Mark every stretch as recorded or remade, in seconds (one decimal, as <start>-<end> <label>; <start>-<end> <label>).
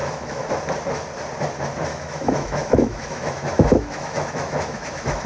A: 0.0-0.5 remade; 0.5-1.9 recorded; 1.9-5.3 remade